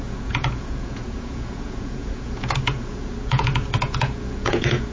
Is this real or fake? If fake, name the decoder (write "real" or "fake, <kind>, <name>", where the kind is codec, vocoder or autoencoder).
fake, vocoder, Vocos